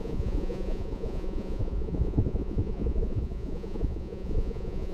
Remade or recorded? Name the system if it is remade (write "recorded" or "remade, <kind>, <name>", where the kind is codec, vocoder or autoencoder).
remade, vocoder, Vocos